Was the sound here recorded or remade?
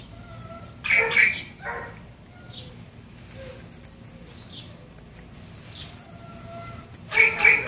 remade